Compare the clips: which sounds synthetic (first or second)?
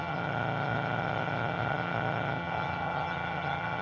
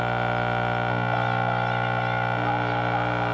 first